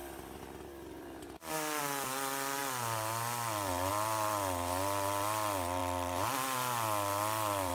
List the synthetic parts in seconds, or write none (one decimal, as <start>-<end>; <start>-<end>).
0.0-1.8; 2.6-3.9; 5.8-7.7